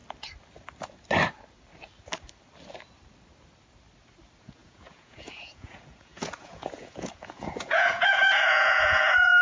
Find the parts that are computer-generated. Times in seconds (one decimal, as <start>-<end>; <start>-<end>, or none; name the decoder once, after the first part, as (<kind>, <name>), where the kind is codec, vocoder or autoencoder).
4.4-9.4 (vocoder, Vocos)